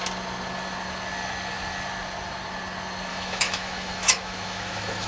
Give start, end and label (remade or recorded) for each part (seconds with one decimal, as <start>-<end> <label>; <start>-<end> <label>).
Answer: 0.0-3.1 recorded; 3.1-5.1 remade